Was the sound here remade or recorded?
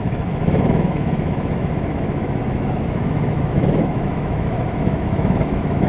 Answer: remade